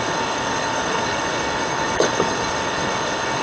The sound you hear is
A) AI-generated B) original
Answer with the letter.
A